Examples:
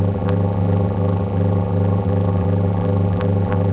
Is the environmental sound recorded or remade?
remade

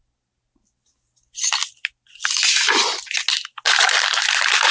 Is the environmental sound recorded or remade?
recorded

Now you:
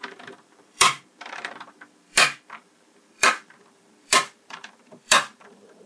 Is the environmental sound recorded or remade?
remade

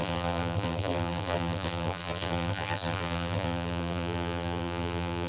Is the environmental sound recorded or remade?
remade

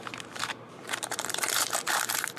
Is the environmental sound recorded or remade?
remade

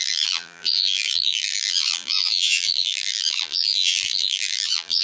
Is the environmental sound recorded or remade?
remade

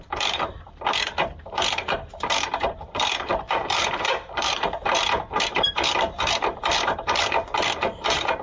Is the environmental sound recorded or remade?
remade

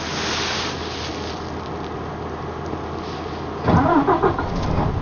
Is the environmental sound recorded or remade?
recorded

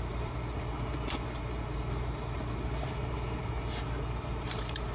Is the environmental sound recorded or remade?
remade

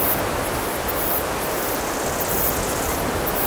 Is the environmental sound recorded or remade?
recorded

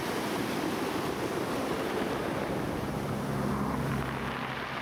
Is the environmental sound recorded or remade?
recorded